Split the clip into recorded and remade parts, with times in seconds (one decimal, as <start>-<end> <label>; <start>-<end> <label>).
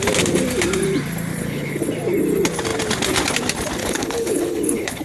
0.0-1.3 recorded; 1.3-1.9 remade; 1.9-3.8 recorded; 3.8-5.0 remade